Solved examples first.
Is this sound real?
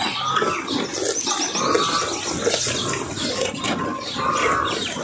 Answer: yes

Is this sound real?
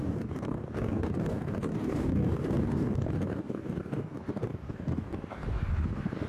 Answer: no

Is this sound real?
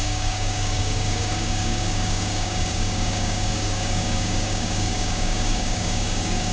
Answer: no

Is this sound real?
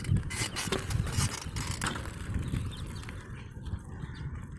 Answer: yes